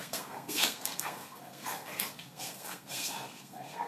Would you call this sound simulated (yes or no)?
yes